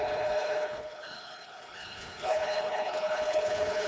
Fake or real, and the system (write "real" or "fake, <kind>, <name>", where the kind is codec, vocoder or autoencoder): fake, codec, HILCodec